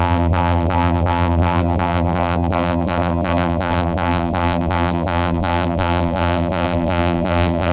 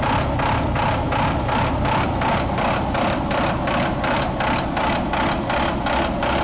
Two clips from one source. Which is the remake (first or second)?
first